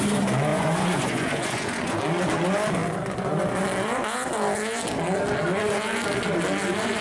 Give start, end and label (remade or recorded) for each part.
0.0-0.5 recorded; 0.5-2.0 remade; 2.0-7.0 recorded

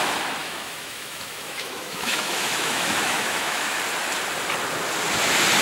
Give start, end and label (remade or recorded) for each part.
0.0-0.4 recorded; 0.4-3.8 remade; 3.8-5.6 recorded

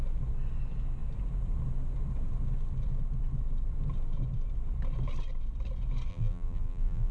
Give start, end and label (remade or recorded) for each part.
0.0-6.1 recorded; 6.1-7.1 remade

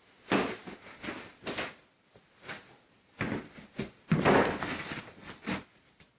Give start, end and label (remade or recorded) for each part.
0.0-6.2 recorded

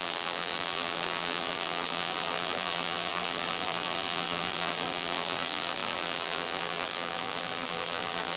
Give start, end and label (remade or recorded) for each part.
0.0-8.4 remade

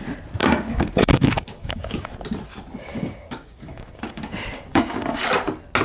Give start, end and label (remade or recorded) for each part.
0.0-0.4 recorded; 0.4-2.1 remade; 2.1-2.9 recorded; 2.9-5.3 remade; 5.3-5.8 recorded